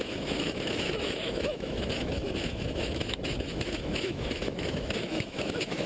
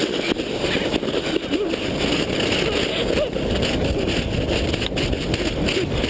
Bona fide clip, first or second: second